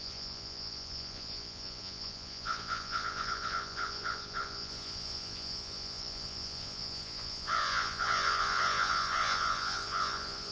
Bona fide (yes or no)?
no